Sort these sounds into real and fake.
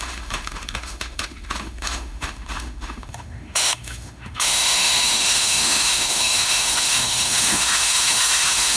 fake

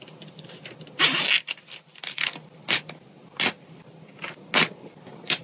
real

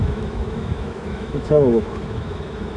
fake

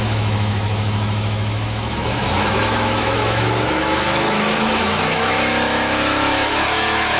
fake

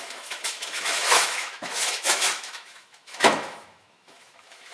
fake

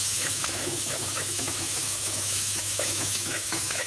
fake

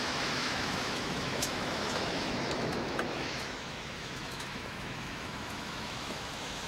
fake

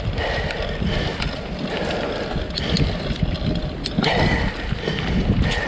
real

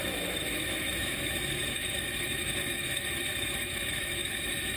fake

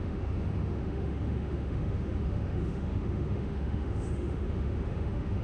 fake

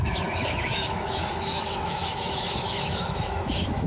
fake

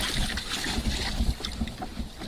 real